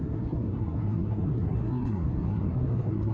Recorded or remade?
remade